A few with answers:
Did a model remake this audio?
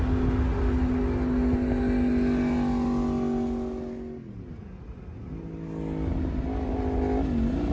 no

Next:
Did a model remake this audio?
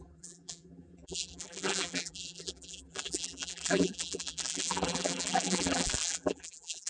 yes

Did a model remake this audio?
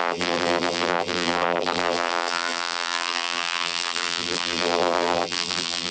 yes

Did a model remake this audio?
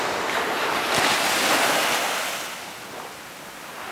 no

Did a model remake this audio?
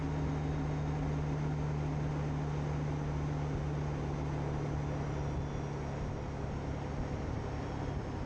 no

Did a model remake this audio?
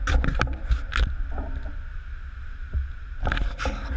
no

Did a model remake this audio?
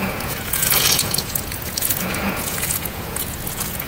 yes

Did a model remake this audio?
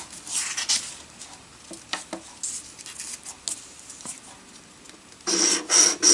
no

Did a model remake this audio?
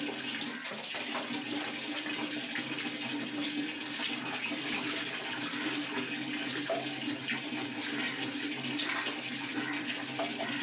no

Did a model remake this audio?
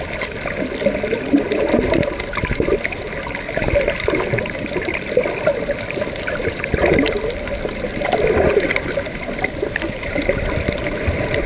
no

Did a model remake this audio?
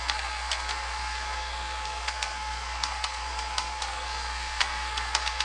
yes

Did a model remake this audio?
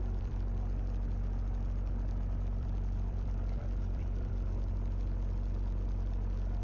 yes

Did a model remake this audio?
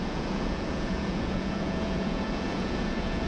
yes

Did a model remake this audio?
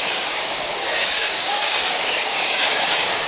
yes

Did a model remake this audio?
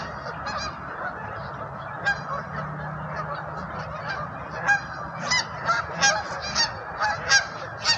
no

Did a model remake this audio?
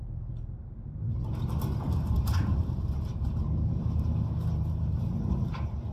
yes